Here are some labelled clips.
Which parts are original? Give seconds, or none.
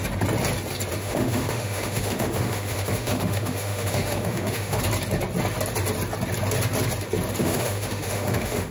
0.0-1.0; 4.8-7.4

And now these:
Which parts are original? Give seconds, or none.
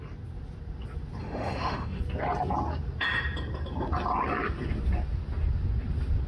0.0-1.2; 2.0-6.3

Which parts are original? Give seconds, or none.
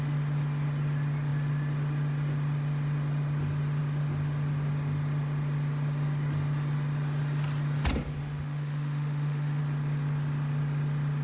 0.0-8.2; 9.6-11.2